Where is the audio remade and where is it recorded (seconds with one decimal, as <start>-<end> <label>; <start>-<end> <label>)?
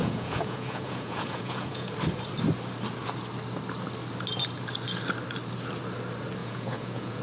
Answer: 0.0-1.9 remade; 1.9-6.4 recorded; 6.4-7.2 remade